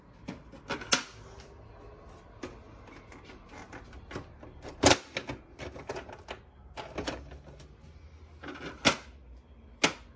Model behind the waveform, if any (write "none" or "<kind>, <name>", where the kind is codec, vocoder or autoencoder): none